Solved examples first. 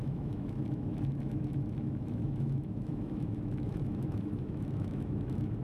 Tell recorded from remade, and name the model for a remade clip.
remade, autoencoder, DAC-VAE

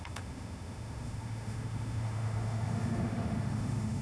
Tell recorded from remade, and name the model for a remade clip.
remade, autoencoder, DAC-VAE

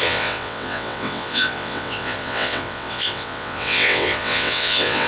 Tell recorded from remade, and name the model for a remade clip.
remade, vocoder, WaveNeXt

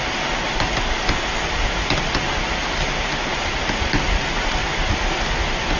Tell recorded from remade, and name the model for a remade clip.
recorded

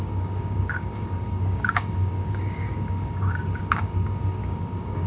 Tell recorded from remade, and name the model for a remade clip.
remade, codec, DAC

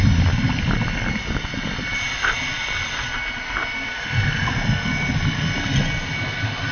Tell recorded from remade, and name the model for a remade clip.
recorded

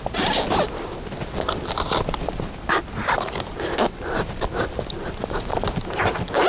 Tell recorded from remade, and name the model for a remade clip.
recorded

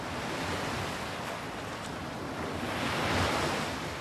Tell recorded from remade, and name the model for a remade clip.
recorded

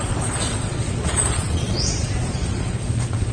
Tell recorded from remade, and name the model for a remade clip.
remade, vocoder, Vocos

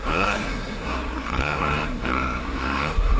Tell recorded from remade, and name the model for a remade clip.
remade, codec, SNAC